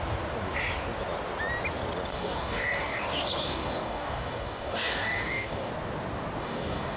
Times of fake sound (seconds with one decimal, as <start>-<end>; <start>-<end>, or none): 2.1-5.7; 6.4-7.0